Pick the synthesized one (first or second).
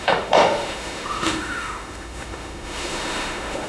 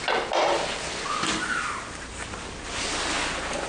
first